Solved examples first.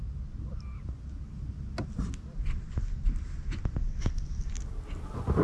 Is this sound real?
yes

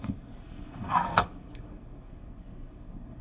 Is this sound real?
no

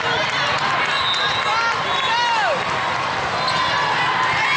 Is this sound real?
yes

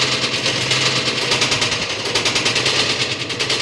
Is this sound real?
yes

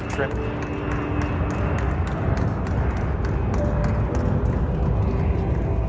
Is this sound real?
yes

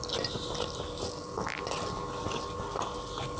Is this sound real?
yes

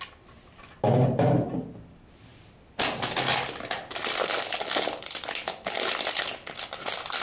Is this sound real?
yes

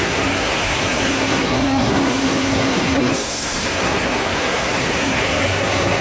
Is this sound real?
no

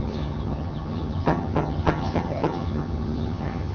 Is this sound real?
no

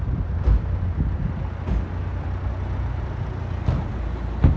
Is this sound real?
yes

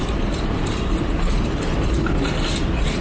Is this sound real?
yes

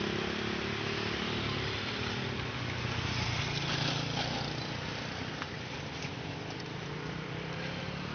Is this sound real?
yes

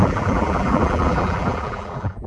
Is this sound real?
no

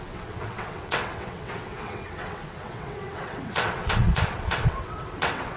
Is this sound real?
no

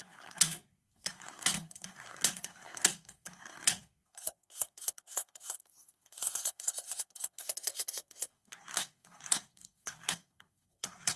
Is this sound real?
no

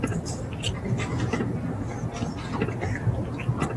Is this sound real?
yes